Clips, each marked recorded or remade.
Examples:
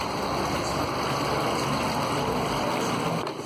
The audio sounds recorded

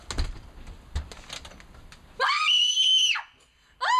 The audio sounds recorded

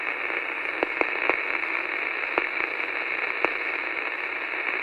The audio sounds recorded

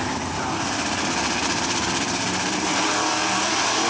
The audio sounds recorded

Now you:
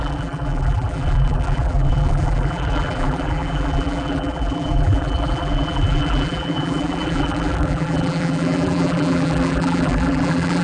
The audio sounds remade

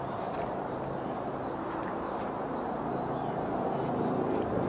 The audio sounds remade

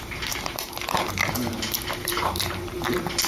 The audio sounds remade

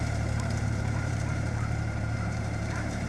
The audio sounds remade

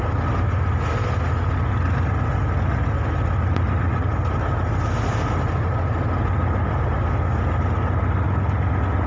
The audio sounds recorded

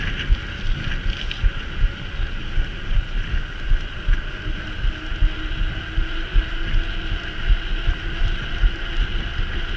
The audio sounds recorded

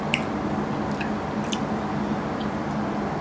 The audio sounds recorded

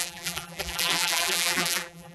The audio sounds remade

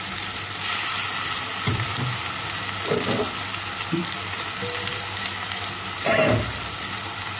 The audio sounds recorded